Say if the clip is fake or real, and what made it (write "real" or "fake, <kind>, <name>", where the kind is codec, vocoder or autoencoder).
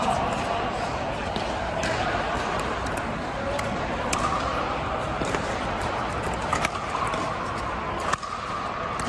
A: fake, vocoder, BigVGAN v2